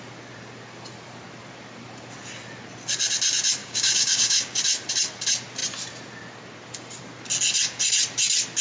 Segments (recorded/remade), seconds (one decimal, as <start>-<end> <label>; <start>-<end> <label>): 0.0-3.6 recorded; 3.6-4.6 remade; 4.6-8.6 recorded